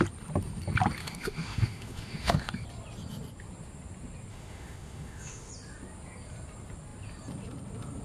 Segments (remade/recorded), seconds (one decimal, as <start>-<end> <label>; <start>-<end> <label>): 0.0-1.0 recorded; 1.0-2.5 remade; 2.5-4.3 recorded; 4.3-5.5 remade; 5.5-8.0 recorded